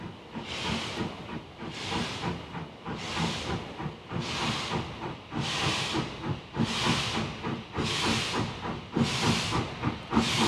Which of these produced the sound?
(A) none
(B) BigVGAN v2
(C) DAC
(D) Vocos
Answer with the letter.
B